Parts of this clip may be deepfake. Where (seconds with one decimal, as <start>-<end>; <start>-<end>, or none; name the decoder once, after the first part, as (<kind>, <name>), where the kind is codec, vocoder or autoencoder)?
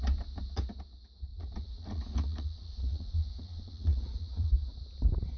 1.3-4.5 (vocoder, Vocos)